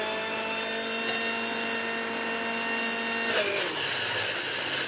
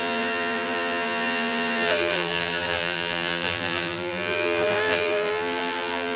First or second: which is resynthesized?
second